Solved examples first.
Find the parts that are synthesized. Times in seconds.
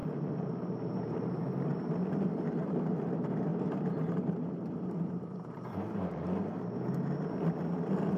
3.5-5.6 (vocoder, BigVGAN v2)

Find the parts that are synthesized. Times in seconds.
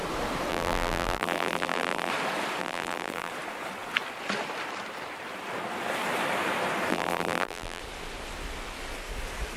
0.5-2.1 (vocoder, BigVGAN v2); 2.6-3.3; 6.9-7.8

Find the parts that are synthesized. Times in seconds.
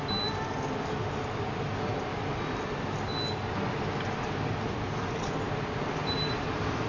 6.0-6.9 (vocoder, BigVGAN v2)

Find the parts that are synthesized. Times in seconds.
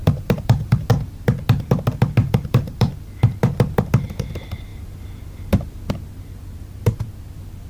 0.0-0.9 (vocoder, BigVGAN v2); 2.2-2.9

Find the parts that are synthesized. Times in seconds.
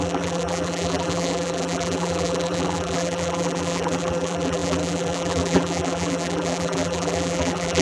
0.0-7.8 (vocoder, BigVGAN v2)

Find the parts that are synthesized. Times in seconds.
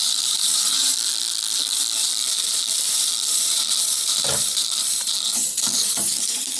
0.0-0.9 (vocoder, BigVGAN v2); 3.3-6.6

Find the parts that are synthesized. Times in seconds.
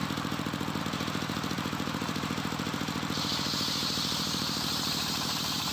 0.8-5.7 (vocoder, BigVGAN v2)